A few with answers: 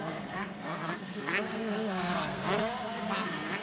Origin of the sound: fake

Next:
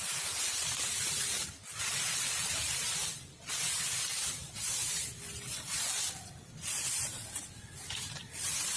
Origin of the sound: real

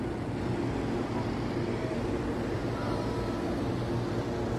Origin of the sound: real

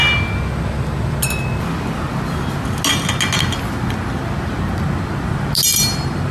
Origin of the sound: real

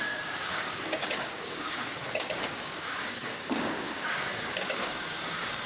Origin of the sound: fake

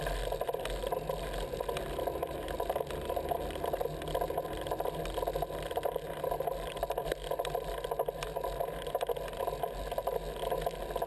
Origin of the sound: real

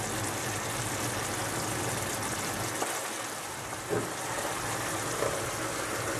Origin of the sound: real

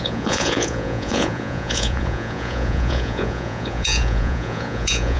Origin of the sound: fake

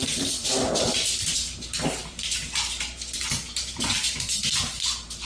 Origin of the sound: fake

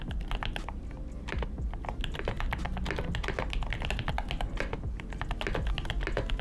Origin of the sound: real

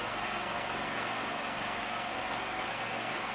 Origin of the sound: fake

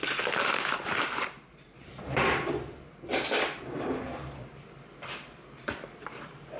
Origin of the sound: fake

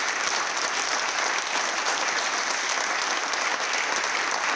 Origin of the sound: real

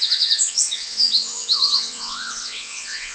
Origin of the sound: fake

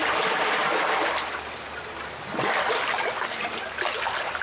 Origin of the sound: real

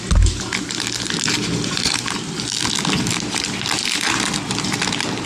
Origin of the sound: real